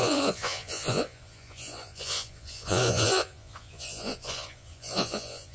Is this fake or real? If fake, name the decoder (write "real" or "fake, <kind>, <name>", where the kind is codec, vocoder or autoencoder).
fake, vocoder, Vocos